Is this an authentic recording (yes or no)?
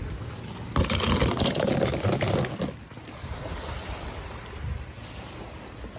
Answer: yes